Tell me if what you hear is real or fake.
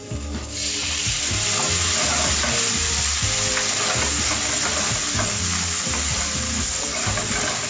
real